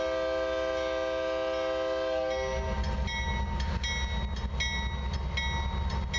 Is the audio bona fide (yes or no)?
yes